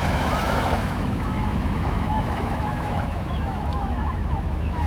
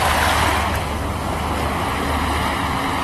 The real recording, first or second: second